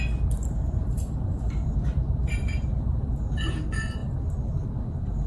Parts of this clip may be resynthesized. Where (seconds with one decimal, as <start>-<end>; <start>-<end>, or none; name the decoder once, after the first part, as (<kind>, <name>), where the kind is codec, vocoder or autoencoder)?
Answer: 0.4-3.1 (vocoder, BigVGAN v2)